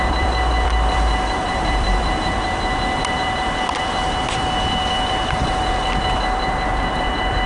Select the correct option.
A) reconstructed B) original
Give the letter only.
A